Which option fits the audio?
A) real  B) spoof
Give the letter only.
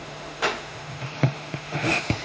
B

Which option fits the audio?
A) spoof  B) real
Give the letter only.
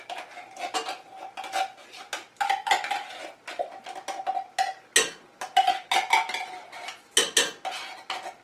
B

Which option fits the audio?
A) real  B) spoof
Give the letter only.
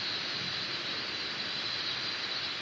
A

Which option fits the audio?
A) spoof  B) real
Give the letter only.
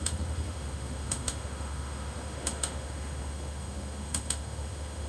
A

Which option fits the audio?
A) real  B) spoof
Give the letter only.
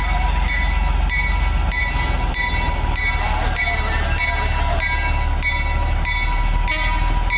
A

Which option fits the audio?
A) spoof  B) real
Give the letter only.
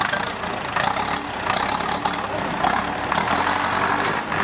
B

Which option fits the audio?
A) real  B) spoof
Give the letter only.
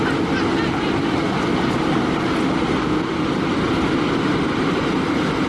A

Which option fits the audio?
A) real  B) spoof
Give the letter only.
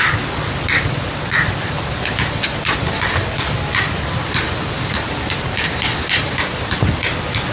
A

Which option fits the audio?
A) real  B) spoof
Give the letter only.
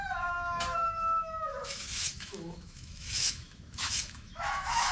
B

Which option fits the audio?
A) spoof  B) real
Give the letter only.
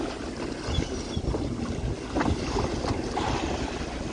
B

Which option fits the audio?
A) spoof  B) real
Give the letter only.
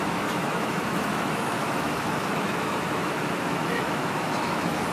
A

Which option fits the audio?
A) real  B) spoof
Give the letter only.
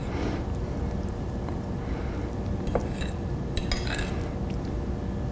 A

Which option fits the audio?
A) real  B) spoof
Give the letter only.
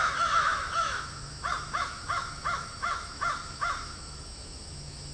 B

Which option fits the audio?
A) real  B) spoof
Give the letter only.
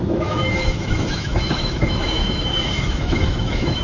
B